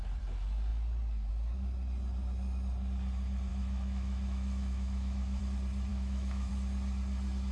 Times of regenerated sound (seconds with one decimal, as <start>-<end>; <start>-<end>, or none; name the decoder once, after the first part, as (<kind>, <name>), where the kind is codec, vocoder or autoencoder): 3.5-5.4 (autoencoder, DAC-VAE); 5.9-6.5